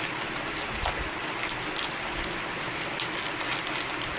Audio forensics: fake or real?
real